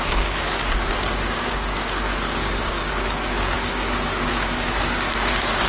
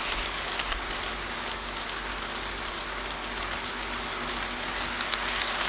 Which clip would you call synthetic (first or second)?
first